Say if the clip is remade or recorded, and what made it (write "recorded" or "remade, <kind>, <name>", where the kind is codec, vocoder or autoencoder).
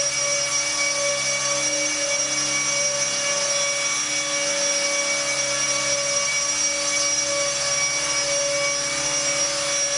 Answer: recorded